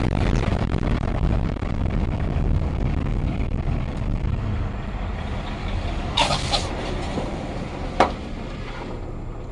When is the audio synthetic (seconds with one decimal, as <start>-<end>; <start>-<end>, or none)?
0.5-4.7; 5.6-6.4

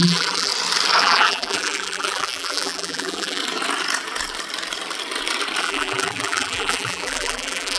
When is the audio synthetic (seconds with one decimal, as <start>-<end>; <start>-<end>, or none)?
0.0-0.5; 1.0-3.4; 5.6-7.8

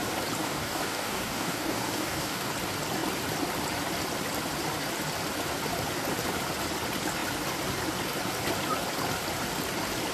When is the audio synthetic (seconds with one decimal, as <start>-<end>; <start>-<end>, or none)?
0.4-2.5

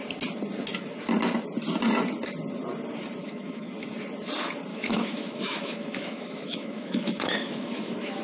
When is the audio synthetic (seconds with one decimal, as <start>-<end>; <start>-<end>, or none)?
3.2-3.7; 4.7-8.2